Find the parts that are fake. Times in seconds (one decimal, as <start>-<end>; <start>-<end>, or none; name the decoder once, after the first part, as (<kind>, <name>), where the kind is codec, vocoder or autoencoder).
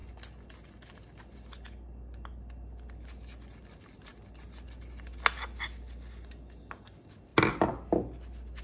none